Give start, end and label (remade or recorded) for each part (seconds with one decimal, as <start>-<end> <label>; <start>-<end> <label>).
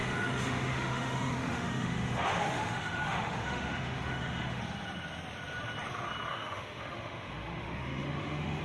0.0-4.6 remade; 4.6-6.3 recorded; 6.3-8.6 remade